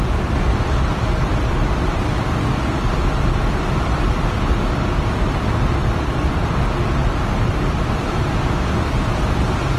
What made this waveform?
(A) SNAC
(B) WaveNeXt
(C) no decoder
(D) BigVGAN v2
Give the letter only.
D